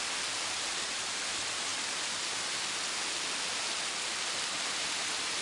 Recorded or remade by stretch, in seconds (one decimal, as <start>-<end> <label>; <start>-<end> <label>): 0.0-5.4 recorded